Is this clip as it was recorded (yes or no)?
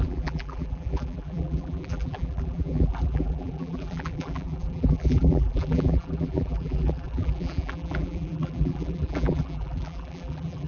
no